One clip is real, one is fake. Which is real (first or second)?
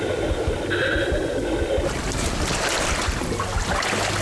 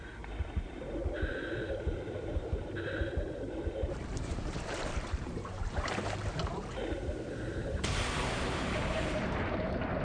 first